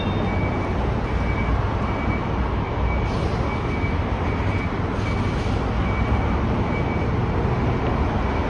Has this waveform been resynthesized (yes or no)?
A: no